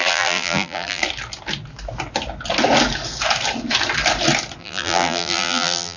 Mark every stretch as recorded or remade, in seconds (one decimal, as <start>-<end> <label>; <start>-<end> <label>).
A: 0.0-1.0 remade; 1.0-4.6 recorded; 4.6-6.0 remade